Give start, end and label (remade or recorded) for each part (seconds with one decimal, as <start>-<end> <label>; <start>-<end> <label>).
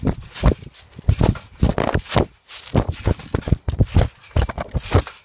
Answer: 0.0-5.2 recorded